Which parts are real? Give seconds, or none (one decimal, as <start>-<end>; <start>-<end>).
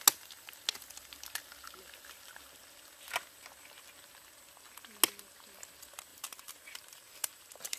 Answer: 0.0-6.1